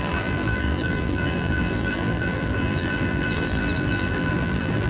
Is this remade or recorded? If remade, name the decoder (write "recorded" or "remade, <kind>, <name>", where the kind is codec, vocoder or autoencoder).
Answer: remade, vocoder, BigVGAN v2